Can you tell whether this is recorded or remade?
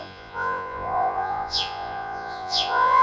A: remade